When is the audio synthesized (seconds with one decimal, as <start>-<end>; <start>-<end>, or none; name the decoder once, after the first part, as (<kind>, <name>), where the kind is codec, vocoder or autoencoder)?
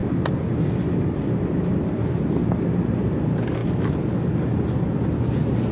none